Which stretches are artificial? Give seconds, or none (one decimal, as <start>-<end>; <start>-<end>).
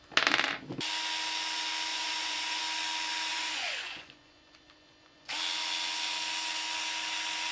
1.9-2.6; 3.3-5.3